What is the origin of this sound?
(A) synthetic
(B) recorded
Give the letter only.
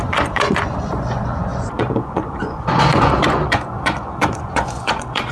A